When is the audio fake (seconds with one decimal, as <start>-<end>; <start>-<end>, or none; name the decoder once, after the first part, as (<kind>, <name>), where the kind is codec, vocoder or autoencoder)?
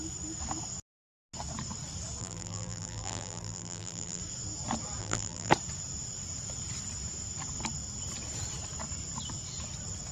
2.2-4.2 (vocoder, BigVGAN v2); 5.0-5.5